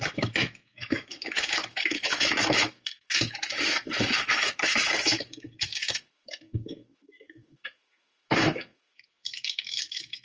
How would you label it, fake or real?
fake